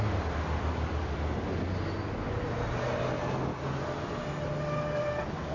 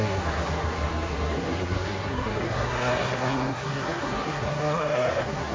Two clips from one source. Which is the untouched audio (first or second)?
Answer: first